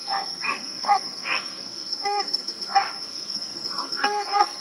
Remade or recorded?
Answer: remade